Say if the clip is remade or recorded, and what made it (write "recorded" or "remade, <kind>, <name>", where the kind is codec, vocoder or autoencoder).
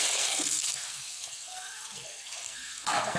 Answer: remade, codec, SNAC